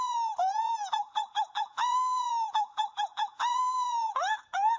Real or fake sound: fake